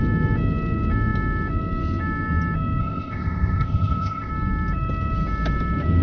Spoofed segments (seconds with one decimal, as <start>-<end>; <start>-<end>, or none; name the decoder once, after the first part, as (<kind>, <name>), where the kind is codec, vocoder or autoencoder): 2.8-4.3 (codec, ZipCodec)